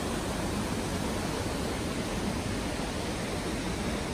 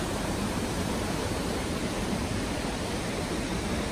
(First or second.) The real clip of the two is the first